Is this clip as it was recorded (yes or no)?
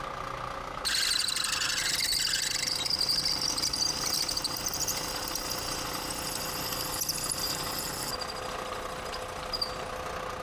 yes